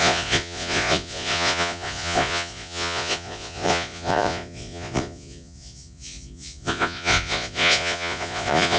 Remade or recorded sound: remade